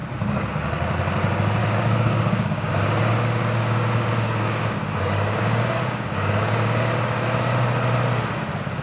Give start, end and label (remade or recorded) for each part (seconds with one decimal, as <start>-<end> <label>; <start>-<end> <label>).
0.0-0.5 remade; 0.5-1.6 recorded; 1.6-6.9 remade; 6.9-8.8 recorded